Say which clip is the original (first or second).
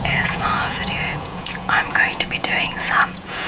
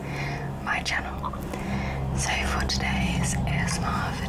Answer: second